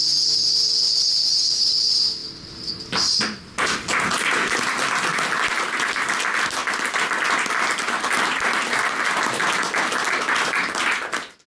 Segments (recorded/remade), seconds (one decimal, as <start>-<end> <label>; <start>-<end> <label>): 0.0-11.5 recorded